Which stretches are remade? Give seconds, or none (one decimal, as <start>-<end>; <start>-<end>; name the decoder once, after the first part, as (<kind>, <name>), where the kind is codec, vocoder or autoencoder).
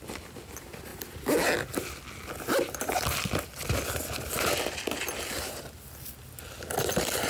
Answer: none